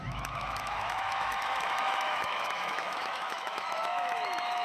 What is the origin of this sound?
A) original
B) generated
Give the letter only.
B